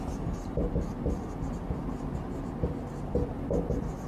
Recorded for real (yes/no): yes